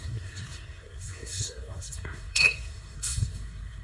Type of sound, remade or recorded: remade